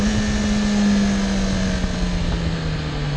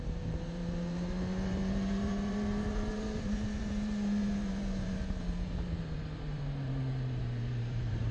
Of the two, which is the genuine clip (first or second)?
first